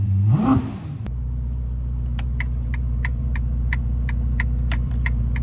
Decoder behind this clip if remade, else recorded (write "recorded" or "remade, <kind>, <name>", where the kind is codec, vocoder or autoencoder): remade, vocoder, BigVGAN v2